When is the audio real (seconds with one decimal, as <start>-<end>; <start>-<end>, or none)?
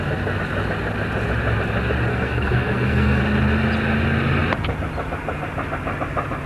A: 0.0-2.1; 3.2-6.5